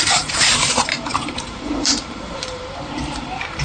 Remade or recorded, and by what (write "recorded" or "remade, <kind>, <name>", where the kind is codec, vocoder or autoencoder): remade, vocoder, BigVGAN v2